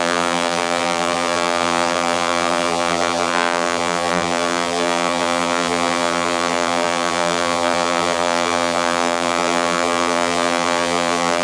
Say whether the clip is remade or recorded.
remade